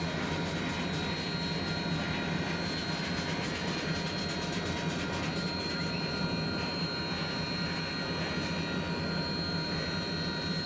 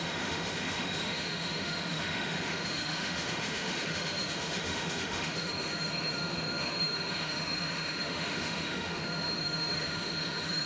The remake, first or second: second